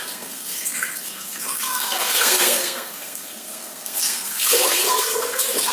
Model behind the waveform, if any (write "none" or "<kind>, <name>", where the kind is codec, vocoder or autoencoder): codec, SNAC